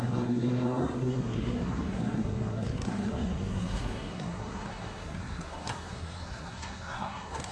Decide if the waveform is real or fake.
fake